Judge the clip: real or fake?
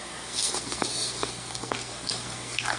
fake